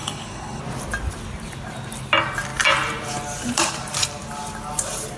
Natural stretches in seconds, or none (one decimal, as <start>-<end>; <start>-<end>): 0.6-5.2